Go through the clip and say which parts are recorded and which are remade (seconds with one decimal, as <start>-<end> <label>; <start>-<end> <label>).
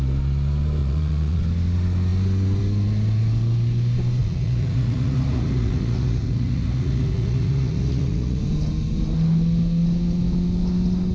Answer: 0.0-0.8 recorded; 0.8-1.4 remade; 1.4-4.2 recorded; 4.2-8.4 remade; 8.4-11.1 recorded